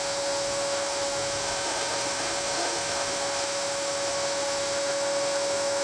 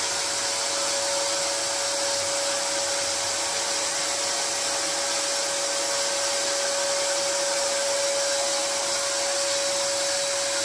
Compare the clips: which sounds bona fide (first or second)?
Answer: second